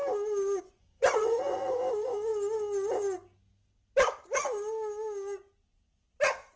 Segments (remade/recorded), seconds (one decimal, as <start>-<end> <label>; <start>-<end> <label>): 0.0-0.6 recorded; 0.6-2.3 remade; 2.3-6.6 recorded